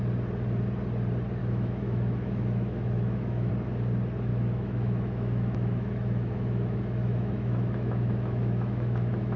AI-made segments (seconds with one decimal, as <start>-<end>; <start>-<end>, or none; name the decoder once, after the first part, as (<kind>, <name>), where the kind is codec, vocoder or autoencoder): 1.4-3.5 (autoencoder, DAC-VAE); 4.3-9.4